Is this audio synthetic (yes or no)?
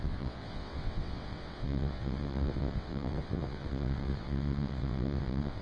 yes